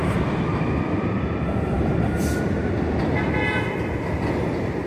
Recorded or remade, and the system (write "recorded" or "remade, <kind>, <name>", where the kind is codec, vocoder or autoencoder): recorded